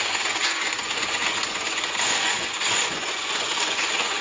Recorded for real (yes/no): no